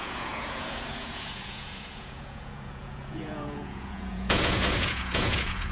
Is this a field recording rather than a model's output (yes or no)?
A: no